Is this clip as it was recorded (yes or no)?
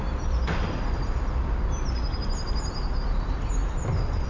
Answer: yes